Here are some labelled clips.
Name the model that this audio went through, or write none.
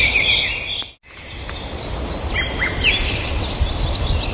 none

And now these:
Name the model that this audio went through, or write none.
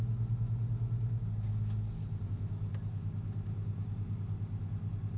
none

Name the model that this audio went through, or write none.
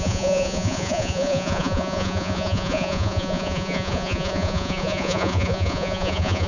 vocoder, Vocos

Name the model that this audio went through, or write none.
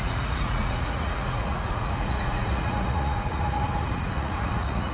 vocoder, Vocos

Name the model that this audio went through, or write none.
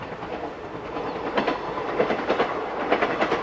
none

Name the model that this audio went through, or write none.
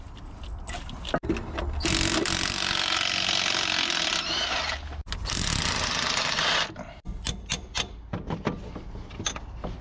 none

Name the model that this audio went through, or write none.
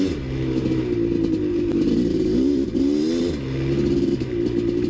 none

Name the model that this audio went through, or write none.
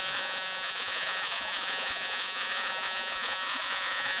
vocoder, Vocos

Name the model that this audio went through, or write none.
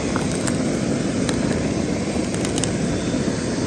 none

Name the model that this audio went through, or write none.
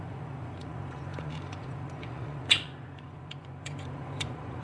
vocoder, Vocos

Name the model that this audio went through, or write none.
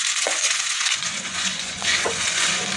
vocoder, Vocos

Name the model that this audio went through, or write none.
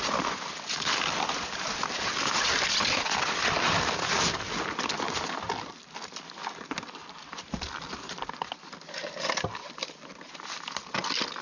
none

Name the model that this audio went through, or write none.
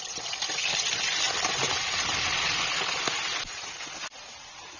none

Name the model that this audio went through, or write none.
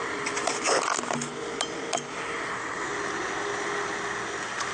none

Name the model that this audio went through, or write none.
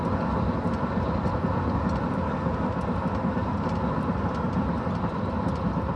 none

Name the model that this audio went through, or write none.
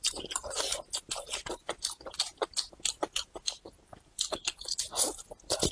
none